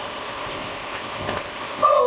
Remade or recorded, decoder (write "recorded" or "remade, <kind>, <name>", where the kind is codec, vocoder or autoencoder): remade, codec, ZipCodec